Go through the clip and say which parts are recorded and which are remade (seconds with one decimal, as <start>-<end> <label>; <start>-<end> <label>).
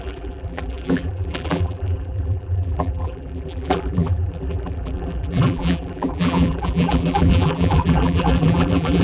0.0-9.0 remade